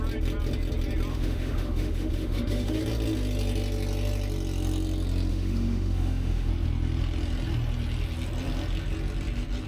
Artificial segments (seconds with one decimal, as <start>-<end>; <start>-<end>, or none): 1.1-2.8; 5.3-6.5